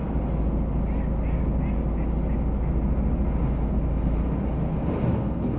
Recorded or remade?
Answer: recorded